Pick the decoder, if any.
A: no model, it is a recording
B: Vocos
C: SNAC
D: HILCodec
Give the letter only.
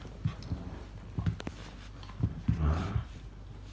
A